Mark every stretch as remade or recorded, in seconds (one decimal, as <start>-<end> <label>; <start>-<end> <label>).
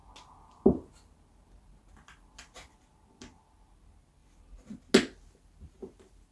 0.0-6.3 recorded